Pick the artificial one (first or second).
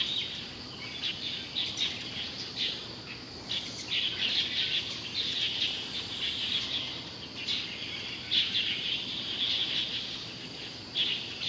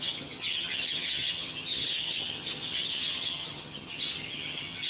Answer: second